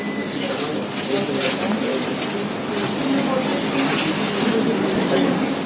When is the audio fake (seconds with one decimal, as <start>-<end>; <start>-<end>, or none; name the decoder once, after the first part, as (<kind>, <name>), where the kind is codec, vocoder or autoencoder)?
none